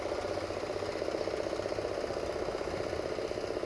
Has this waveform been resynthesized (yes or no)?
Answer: no